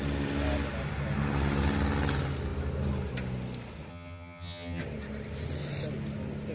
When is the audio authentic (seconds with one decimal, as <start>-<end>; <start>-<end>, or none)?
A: 0.0-3.9; 4.8-6.5